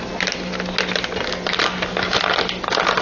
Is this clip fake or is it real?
real